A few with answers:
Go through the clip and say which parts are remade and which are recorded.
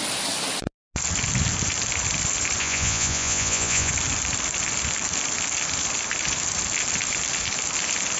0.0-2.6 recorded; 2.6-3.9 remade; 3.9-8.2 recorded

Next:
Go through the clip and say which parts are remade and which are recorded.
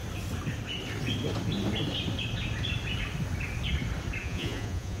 0.0-4.2 recorded; 4.2-5.0 remade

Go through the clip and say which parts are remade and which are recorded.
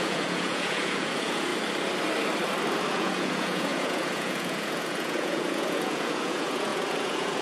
0.0-1.5 remade; 1.5-2.9 recorded; 2.9-7.4 remade